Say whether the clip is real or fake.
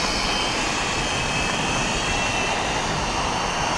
real